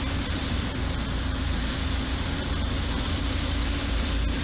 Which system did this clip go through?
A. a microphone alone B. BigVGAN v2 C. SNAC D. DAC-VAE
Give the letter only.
B